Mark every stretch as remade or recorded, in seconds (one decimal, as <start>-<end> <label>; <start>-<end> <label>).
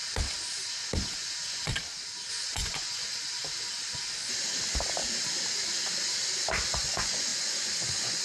0.0-1.2 recorded; 1.2-1.7 remade; 1.7-2.3 recorded; 2.3-3.1 remade; 3.1-6.7 recorded; 6.7-8.2 remade